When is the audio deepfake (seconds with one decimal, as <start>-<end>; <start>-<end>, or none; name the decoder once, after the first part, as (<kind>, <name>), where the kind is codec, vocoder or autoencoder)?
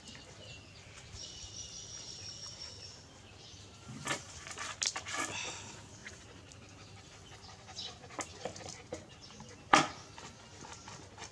none